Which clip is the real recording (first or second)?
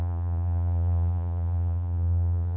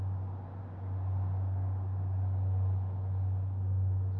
second